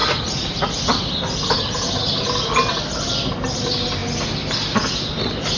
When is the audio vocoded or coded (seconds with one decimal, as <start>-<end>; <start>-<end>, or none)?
0.0-0.7